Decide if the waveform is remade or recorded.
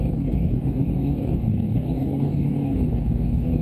remade